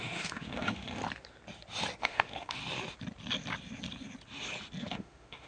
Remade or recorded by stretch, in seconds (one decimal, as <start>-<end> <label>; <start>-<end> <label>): 0.0-1.0 remade; 1.0-2.0 recorded; 2.0-2.6 remade; 2.6-4.8 recorded; 4.8-5.5 remade